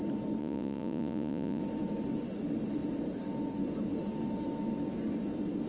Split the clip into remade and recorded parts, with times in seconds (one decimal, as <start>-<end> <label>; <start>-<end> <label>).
0.0-0.4 recorded; 0.4-1.6 remade; 1.6-5.7 recorded